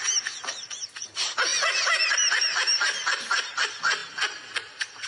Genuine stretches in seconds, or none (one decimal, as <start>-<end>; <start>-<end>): 0.0-5.1